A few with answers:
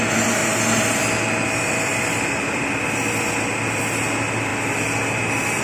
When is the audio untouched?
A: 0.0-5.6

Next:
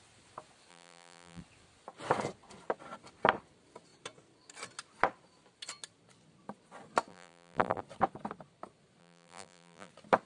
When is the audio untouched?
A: 0.0-0.7; 1.4-7.1; 7.8-9.0; 9.9-10.3